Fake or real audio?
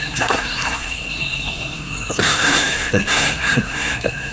fake